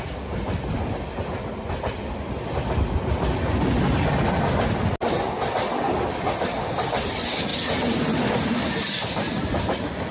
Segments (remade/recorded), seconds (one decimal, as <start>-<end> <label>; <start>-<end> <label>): 0.0-10.1 recorded